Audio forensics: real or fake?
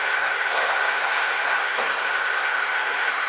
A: fake